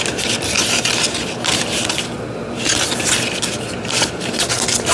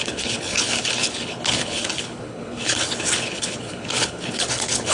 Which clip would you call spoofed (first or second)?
second